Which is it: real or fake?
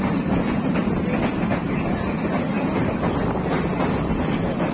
real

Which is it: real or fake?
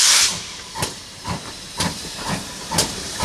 fake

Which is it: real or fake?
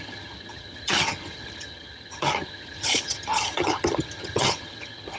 fake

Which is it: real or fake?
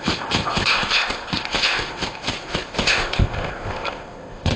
fake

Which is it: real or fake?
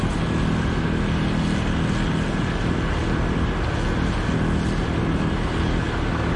real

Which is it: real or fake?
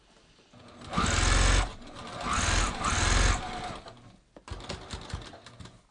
real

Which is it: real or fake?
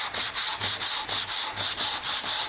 real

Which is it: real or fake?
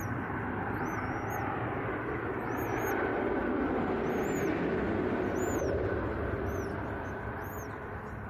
real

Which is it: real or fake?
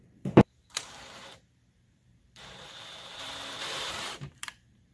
fake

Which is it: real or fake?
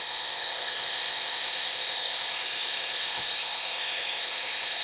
fake